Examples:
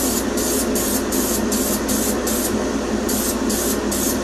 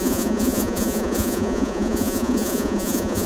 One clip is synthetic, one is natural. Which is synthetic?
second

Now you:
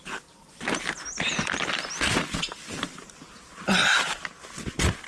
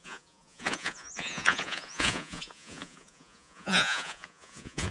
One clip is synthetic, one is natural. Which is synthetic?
second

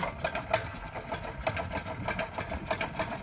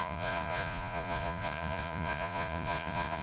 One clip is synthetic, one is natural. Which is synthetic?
second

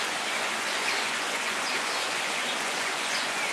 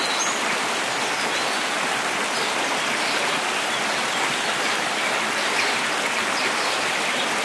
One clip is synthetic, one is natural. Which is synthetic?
first